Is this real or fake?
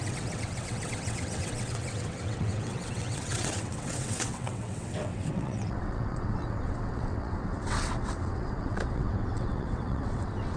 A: fake